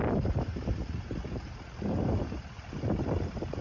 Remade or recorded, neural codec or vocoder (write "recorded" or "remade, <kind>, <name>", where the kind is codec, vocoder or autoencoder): recorded